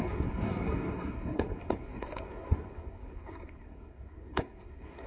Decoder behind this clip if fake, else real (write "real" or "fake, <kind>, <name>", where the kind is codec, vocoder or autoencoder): fake, codec, SNAC